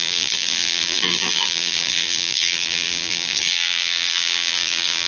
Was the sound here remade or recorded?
remade